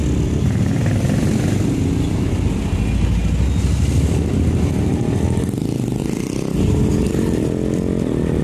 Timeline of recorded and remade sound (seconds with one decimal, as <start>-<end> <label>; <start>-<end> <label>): 0.0-6.0 recorded; 6.0-6.9 remade; 6.9-8.4 recorded